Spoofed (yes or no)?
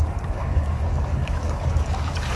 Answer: yes